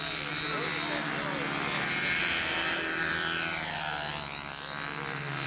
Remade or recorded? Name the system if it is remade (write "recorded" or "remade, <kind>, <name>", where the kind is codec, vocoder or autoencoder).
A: recorded